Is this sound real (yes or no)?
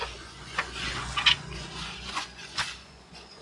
no